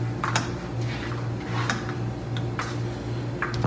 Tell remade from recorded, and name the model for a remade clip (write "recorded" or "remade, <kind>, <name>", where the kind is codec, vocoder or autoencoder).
recorded